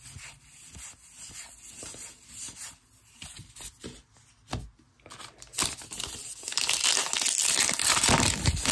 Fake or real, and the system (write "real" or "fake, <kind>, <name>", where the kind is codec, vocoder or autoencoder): real